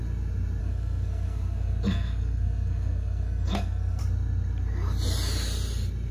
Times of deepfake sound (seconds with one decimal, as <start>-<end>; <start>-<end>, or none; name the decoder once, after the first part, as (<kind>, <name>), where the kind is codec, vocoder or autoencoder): 0.6-4.0 (codec, SNAC)